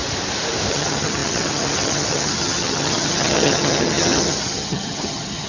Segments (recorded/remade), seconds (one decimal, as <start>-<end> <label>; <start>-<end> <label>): 0.0-0.7 recorded; 0.7-5.5 remade